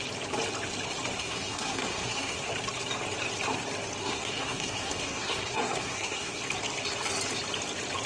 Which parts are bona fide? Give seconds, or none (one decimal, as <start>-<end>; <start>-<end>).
0.0-1.2; 2.5-4.0; 6.4-8.1